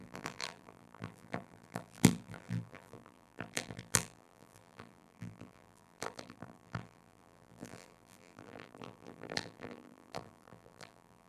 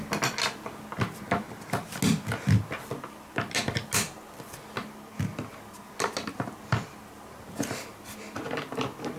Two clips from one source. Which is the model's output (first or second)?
first